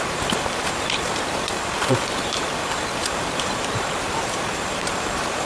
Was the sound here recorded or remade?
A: remade